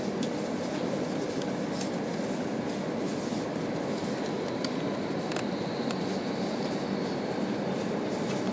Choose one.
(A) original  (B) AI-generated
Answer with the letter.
B